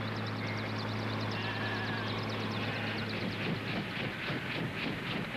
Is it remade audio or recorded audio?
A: recorded